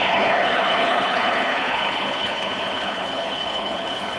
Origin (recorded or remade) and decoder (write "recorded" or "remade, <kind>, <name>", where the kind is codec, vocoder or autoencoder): remade, codec, HILCodec